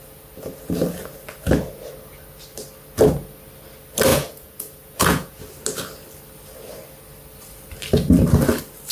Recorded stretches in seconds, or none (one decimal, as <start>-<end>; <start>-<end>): 0.0-4.1; 5.4-8.9